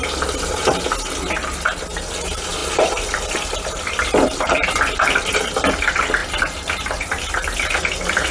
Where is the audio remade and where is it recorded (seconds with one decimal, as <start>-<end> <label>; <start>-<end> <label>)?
0.0-2.6 recorded; 2.6-5.8 remade; 5.8-6.2 recorded; 6.2-7.8 remade; 7.8-8.3 recorded